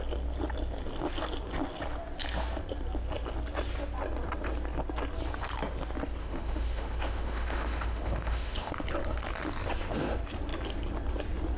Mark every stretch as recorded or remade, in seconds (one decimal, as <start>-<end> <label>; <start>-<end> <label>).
0.0-6.2 recorded; 6.2-8.7 remade; 8.7-11.6 recorded